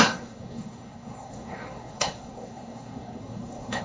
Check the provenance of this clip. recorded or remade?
remade